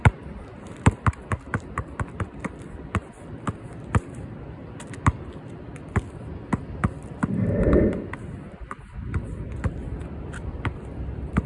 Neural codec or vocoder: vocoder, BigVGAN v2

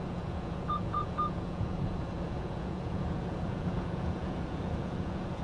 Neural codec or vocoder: vocoder, Vocos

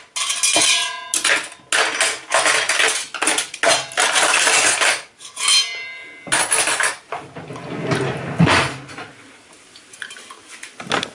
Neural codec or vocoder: none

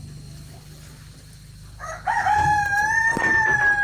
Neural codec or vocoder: none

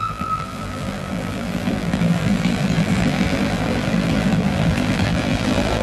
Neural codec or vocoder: vocoder, BigVGAN v2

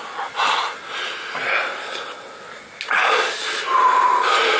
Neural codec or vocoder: none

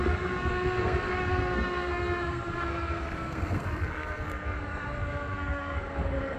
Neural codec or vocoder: codec, SNAC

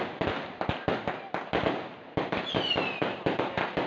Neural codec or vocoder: none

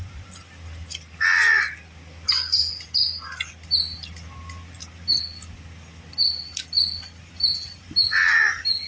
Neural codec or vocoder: none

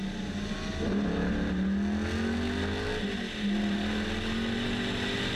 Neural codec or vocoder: none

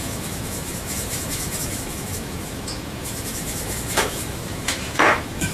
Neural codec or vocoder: autoencoder, DAC-VAE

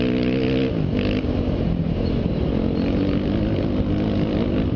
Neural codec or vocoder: none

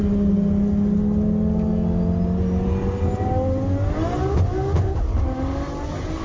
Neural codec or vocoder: none